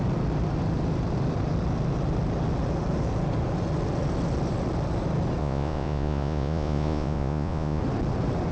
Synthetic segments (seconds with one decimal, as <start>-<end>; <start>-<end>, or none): 5.4-7.8